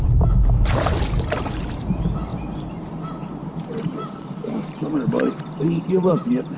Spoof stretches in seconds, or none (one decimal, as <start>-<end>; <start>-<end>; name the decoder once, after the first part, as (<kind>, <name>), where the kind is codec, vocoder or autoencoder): 2.3-6.6 (vocoder, BigVGAN v2)